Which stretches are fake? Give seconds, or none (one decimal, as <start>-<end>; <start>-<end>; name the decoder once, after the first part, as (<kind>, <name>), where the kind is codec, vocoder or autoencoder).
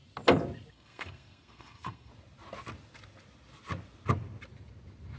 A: 0.7-2.1 (codec, SNAC)